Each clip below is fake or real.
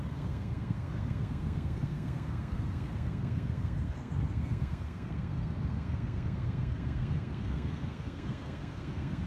fake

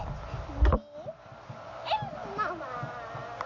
real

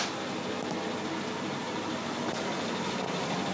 real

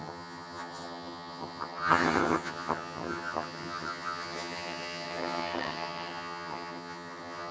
fake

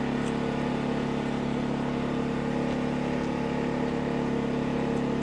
real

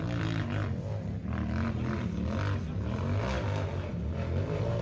real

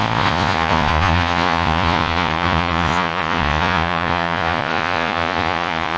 fake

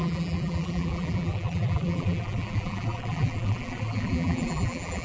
fake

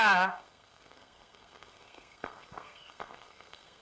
fake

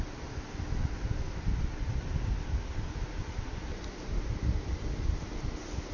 real